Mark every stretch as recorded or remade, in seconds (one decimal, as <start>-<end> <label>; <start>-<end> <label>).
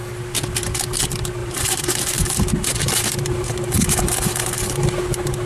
0.0-1.4 recorded; 1.4-2.4 remade; 2.4-5.5 recorded